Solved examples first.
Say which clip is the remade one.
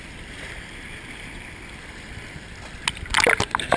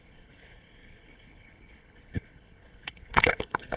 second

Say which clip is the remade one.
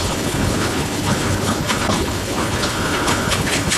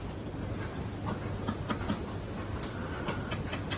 first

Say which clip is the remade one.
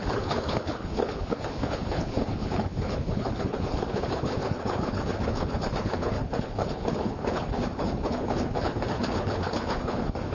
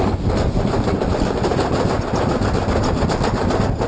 first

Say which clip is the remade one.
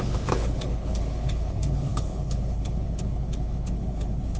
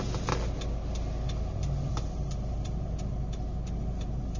first